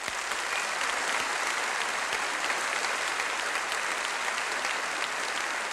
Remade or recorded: recorded